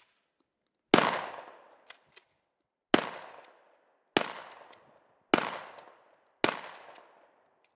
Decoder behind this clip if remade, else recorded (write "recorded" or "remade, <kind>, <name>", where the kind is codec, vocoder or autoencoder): recorded